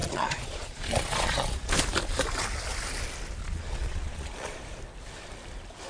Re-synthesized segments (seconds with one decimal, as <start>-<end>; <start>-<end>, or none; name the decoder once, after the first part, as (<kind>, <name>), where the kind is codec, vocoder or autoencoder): 0.0-1.7 (vocoder, Vocos); 3.4-4.6